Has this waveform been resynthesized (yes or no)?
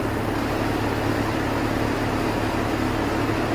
no